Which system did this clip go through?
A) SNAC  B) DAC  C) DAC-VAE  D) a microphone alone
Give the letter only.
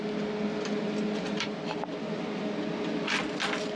D